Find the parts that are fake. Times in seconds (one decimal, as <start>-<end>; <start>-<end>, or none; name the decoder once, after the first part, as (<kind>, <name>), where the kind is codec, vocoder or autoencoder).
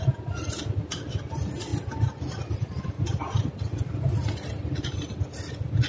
none